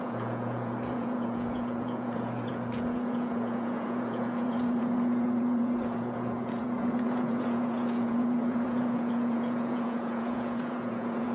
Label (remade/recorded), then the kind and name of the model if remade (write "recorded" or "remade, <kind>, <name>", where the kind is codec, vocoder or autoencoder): remade, vocoder, Vocos